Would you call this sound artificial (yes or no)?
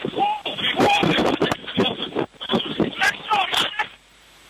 yes